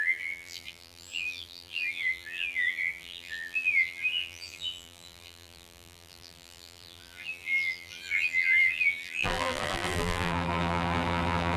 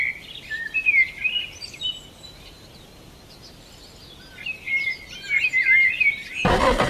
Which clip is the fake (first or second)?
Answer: first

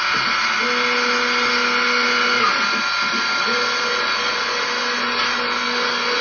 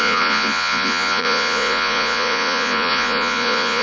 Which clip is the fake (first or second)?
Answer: second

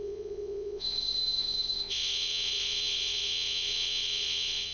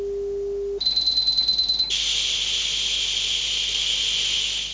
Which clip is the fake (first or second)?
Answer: first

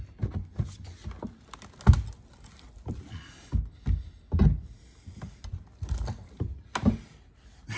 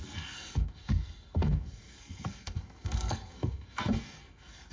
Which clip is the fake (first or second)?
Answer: second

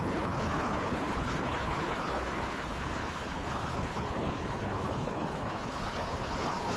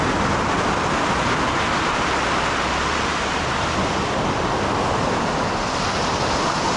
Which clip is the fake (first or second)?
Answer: first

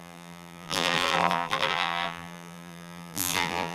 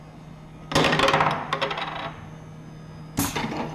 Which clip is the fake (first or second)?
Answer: first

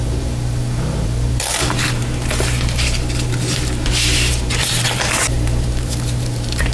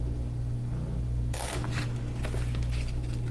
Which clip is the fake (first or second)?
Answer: first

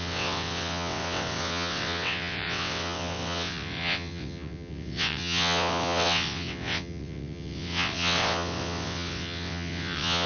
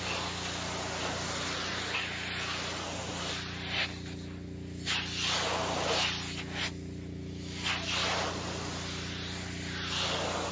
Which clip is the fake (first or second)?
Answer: first